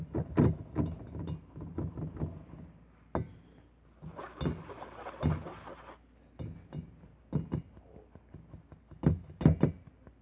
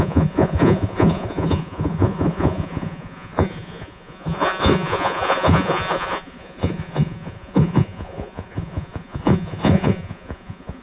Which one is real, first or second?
first